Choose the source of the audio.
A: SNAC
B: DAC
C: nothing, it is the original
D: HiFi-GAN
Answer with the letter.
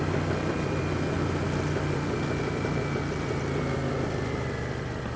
C